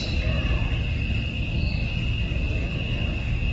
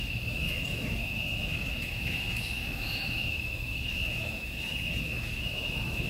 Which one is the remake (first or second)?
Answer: second